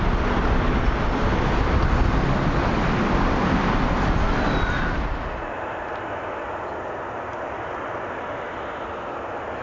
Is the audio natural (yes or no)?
yes